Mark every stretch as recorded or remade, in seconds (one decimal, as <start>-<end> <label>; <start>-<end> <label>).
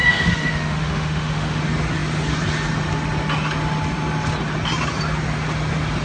0.0-1.6 remade; 1.6-6.0 recorded